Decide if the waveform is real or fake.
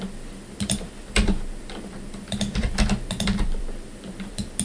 fake